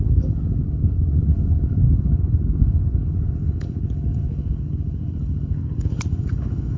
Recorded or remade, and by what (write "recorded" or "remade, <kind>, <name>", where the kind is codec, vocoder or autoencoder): remade, codec, HILCodec